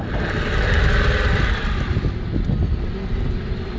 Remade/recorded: recorded